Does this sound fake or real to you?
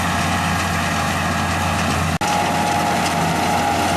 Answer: real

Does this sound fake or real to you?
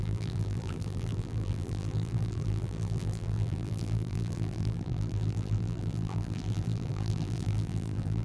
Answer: fake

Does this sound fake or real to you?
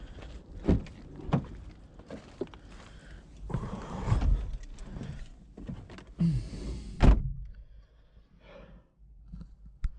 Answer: real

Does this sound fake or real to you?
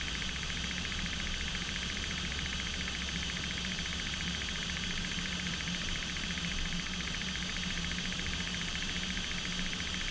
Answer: fake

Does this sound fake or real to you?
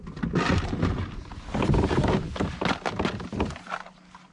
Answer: real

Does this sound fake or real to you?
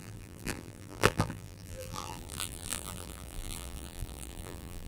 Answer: fake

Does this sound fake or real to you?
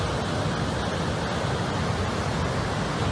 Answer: real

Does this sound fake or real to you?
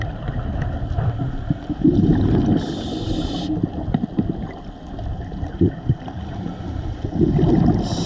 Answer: real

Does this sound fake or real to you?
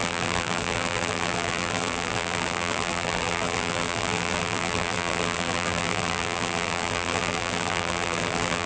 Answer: fake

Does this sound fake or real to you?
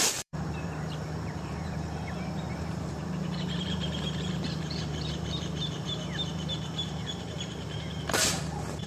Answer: fake